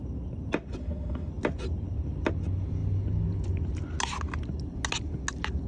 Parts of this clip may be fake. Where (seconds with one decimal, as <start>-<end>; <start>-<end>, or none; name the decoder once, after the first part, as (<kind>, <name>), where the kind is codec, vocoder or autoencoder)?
0.8-1.3 (autoencoder, DAC-VAE)